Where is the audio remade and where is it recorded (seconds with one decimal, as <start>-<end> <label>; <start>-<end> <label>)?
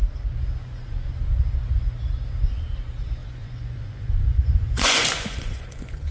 0.0-0.6 recorded; 0.6-1.1 remade; 1.1-3.2 recorded; 3.2-6.1 remade